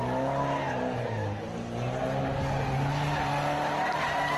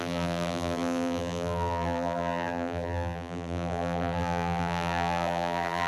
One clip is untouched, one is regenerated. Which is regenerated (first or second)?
second